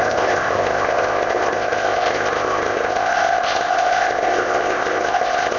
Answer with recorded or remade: remade